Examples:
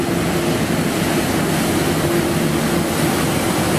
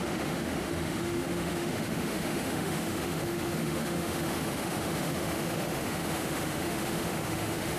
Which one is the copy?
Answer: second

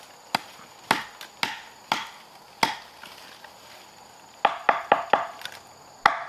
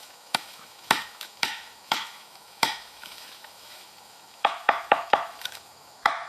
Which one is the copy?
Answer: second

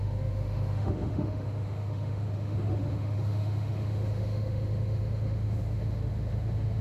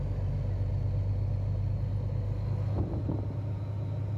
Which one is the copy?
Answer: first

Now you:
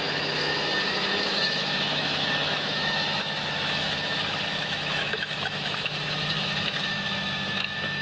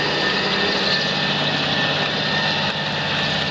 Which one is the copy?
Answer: first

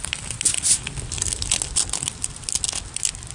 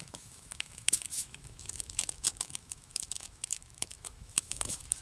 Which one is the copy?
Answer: second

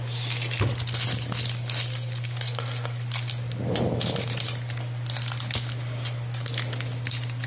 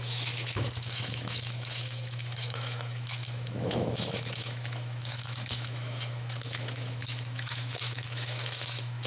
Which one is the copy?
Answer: second